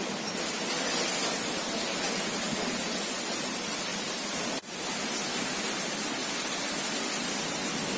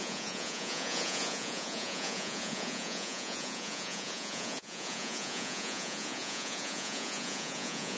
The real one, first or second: first